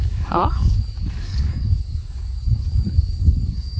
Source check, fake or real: fake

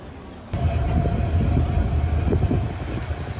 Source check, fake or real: real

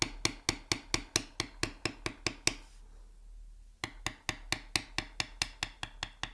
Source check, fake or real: real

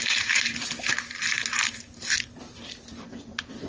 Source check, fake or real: real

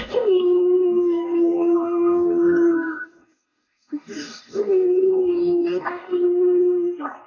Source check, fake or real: fake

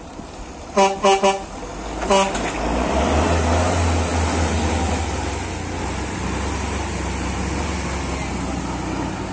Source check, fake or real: real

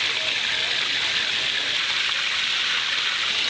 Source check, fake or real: real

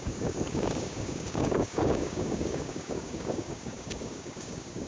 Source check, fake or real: fake